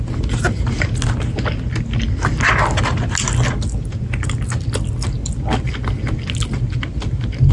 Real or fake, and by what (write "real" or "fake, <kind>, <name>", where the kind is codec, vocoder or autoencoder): real